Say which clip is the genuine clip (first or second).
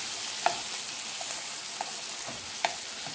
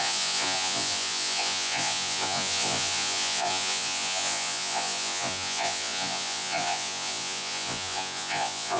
first